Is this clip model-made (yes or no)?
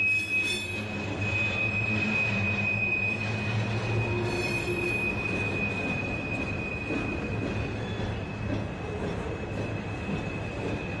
no